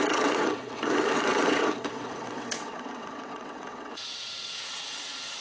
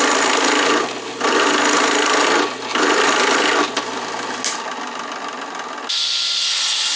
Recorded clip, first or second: second